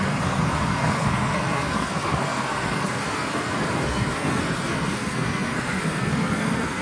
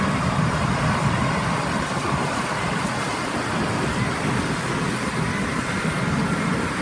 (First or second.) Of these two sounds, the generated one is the first